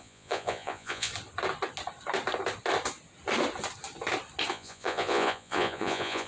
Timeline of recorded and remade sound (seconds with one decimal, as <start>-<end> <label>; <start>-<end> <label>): 0.0-1.1 remade; 1.1-4.5 recorded; 4.5-6.3 remade